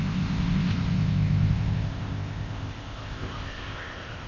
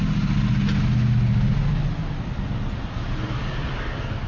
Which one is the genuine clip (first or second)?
second